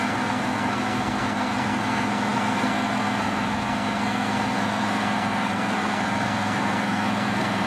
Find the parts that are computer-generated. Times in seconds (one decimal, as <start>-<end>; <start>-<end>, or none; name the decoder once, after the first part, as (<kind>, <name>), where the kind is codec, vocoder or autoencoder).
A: 0.0-7.7 (codec, SNAC)

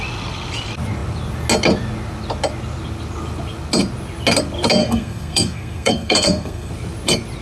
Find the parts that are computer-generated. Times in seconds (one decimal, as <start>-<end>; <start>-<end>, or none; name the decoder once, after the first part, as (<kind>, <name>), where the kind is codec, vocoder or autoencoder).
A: 4.8-6.7 (codec, SNAC)